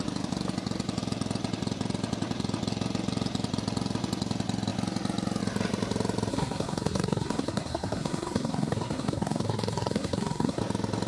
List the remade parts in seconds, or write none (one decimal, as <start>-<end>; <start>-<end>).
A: 6.3-10.6